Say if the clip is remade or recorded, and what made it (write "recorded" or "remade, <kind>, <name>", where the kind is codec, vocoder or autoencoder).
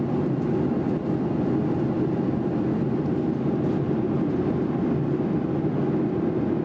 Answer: recorded